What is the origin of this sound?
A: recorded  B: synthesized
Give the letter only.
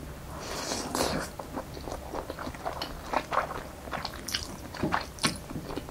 A